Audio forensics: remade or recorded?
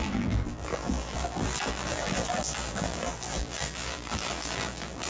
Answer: remade